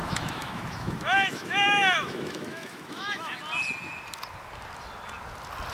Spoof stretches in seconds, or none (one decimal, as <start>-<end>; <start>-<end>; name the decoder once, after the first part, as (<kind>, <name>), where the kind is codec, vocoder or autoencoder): 0.0-3.4 (autoencoder, DAC-VAE)